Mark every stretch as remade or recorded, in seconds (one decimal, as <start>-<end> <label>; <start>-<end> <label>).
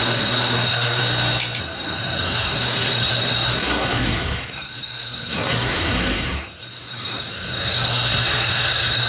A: 0.0-1.0 remade; 1.0-1.6 recorded; 1.6-9.1 remade